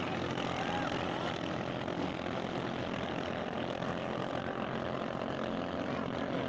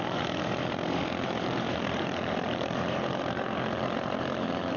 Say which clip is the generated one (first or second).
second